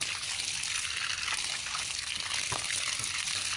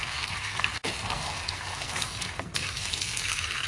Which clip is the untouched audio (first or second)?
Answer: first